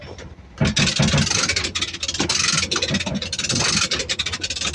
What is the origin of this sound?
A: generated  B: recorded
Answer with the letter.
B